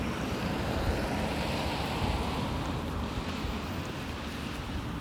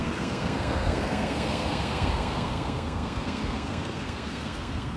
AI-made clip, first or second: second